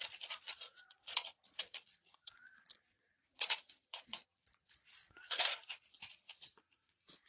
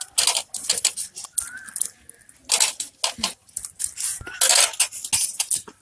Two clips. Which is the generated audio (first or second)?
first